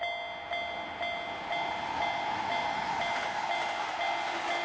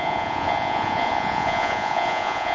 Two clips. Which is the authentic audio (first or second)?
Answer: first